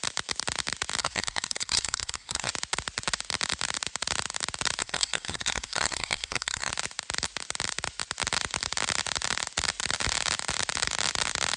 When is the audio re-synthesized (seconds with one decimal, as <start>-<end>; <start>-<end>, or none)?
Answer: 1.0-2.5; 4.8-6.7